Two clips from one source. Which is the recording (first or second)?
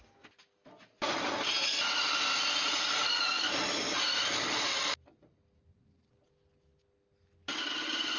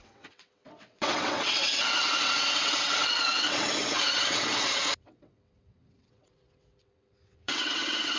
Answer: first